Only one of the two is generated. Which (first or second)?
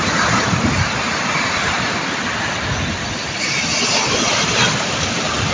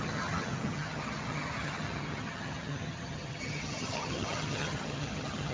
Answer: second